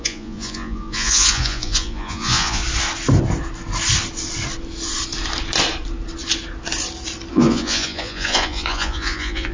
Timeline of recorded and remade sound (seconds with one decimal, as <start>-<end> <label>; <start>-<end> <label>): 0.0-2.6 remade; 2.6-7.3 recorded; 7.3-9.5 remade